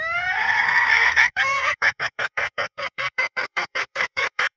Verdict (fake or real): fake